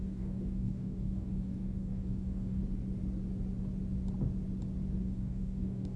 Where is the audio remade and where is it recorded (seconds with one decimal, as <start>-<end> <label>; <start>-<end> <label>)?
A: 0.0-2.6 remade; 2.6-5.0 recorded; 5.0-6.0 remade